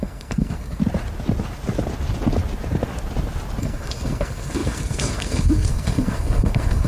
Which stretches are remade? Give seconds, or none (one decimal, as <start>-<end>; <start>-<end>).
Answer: 0.0-0.8; 3.6-6.9